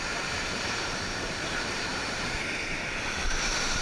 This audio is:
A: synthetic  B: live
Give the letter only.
A